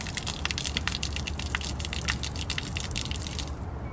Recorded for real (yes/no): yes